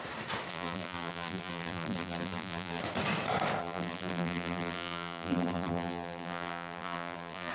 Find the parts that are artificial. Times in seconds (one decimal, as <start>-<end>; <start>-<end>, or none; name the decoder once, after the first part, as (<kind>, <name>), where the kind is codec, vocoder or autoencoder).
0.5-2.8 (vocoder, BigVGAN v2); 3.6-7.5